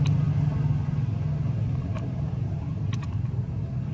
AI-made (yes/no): no